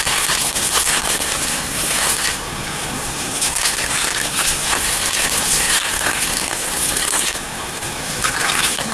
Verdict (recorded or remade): remade